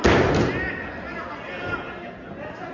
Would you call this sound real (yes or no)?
yes